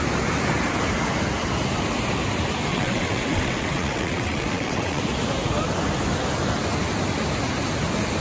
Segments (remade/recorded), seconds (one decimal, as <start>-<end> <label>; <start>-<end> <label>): 0.0-2.7 recorded; 2.7-5.0 remade; 5.0-8.2 recorded